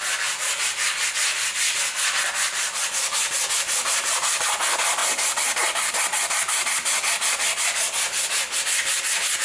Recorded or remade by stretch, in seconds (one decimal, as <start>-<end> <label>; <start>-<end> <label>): 0.0-9.4 recorded